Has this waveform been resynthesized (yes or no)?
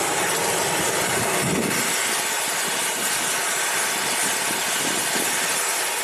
no